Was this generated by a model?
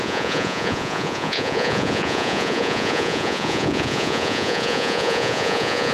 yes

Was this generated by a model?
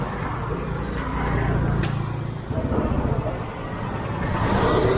no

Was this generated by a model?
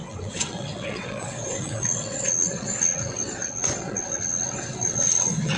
yes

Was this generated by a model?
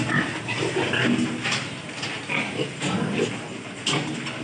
no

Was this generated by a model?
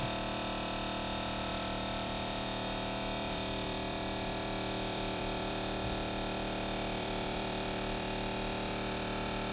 yes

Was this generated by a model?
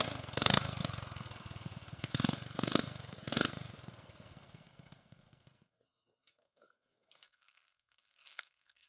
yes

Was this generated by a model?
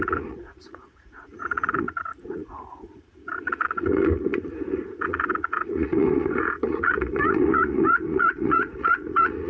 yes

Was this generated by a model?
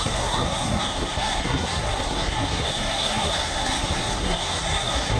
yes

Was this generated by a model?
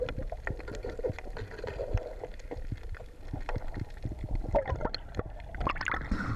no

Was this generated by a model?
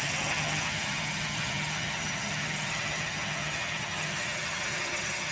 yes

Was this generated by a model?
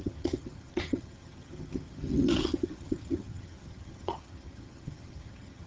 yes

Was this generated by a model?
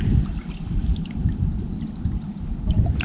yes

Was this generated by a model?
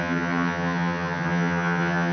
yes